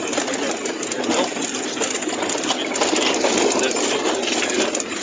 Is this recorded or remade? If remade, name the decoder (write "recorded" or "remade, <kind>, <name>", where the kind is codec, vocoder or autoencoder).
recorded